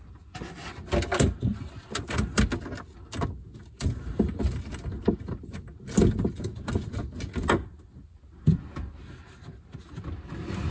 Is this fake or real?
real